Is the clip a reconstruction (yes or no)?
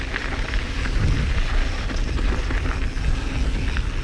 no